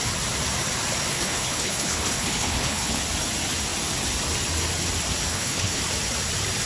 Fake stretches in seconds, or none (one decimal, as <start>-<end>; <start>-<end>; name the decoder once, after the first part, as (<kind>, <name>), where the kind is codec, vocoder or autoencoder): 1.1-3.0 (codec, HILCodec); 5.3-5.8